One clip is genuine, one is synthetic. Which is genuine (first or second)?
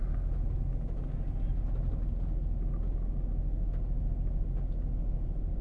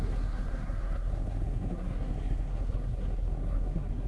first